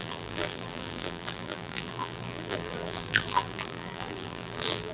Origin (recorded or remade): remade